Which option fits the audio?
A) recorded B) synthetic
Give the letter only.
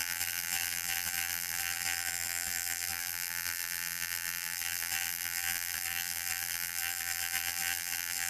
B